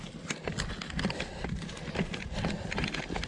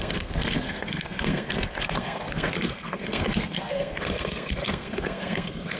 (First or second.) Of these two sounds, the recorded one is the first